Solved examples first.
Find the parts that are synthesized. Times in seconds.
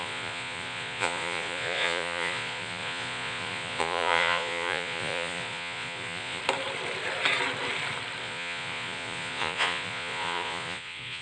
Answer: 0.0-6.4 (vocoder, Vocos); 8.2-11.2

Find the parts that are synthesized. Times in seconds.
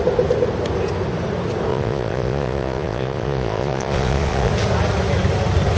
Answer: 1.7-4.5 (vocoder, Vocos)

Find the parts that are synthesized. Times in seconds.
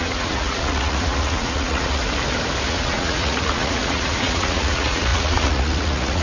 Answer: 0.0-2.0 (vocoder, Vocos); 2.7-6.2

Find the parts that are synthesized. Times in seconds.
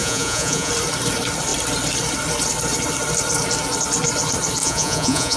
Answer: 0.0-0.7 (vocoder, Vocos); 4.6-5.4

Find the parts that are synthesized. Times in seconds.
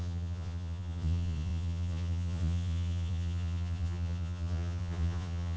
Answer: 0.0-5.6 (vocoder, Vocos)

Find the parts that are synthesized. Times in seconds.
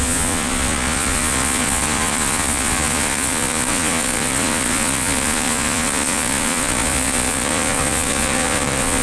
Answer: 0.0-9.0 (vocoder, Vocos)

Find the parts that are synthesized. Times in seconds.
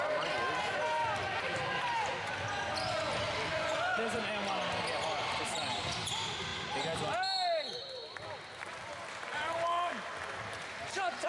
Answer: 3.5-4.2 (vocoder, Vocos)